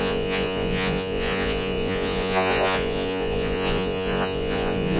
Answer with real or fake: fake